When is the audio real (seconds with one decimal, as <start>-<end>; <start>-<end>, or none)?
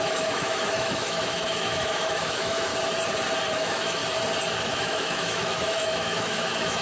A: 2.7-3.5; 4.0-4.6